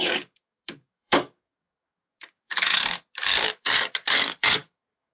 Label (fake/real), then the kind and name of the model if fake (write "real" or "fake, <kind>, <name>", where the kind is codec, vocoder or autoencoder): fake, codec, DAC